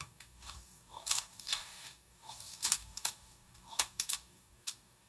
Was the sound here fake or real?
fake